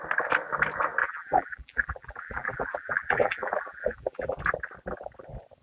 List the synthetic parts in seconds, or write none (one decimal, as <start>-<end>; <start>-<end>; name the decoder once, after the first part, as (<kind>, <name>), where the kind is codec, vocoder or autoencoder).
1.0-4.4 (vocoder, BigVGAN v2)